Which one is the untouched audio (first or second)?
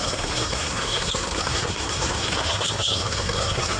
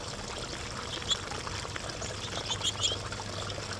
second